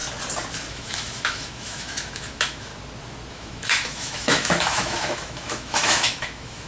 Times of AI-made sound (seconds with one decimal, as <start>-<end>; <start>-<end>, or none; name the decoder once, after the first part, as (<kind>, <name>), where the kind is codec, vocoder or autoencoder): 0.7-2.7 (autoencoder, DAC-VAE); 3.3-6.7